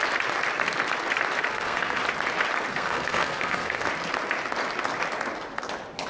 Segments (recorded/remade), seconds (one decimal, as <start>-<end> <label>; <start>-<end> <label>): 0.0-1.5 recorded; 1.5-2.0 remade; 2.0-2.7 recorded; 2.7-3.9 remade; 3.9-6.1 recorded